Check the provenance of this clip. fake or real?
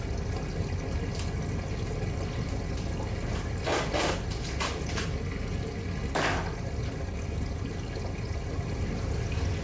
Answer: real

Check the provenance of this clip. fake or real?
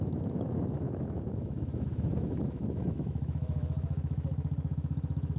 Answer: fake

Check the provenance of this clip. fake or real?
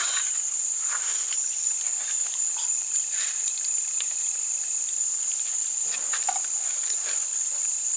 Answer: fake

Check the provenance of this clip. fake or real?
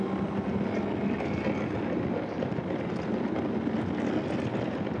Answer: real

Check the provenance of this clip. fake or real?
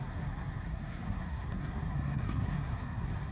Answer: fake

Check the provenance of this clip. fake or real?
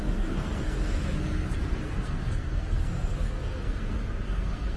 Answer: fake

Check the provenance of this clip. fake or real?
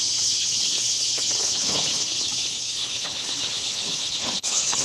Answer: fake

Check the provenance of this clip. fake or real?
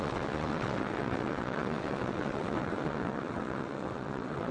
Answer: fake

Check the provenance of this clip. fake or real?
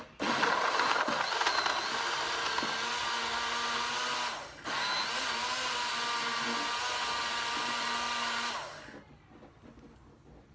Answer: real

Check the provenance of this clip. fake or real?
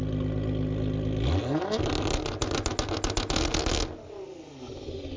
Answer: real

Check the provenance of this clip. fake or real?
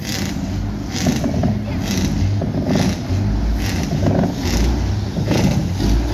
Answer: real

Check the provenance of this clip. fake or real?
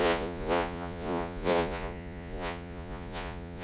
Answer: fake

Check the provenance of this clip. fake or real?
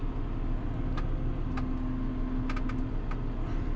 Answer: real